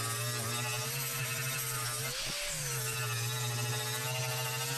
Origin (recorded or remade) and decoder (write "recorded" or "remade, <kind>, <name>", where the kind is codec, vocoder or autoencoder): recorded